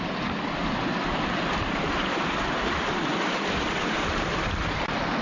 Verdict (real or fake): fake